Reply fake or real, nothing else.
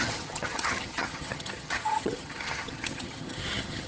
fake